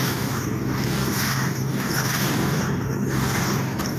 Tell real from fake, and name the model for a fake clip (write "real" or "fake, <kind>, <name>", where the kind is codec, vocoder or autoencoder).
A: fake, codec, DAC